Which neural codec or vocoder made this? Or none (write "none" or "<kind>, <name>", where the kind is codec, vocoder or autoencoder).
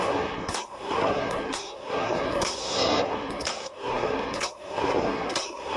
codec, SNAC